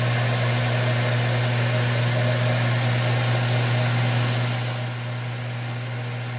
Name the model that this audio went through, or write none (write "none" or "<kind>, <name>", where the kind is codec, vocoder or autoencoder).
none